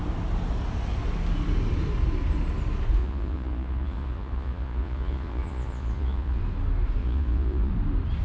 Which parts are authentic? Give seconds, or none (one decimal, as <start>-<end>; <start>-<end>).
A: 0.0-3.0; 6.4-7.0; 7.7-8.2